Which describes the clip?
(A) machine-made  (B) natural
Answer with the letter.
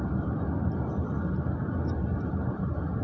B